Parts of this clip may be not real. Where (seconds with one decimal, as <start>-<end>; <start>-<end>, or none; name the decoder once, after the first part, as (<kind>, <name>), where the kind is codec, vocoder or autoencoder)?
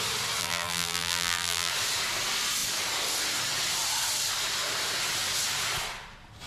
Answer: 0.4-1.7 (vocoder, BigVGAN v2)